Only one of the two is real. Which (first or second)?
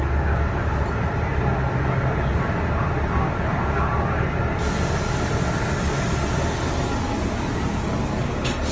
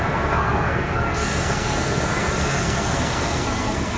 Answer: first